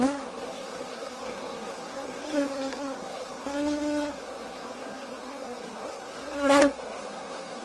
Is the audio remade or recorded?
remade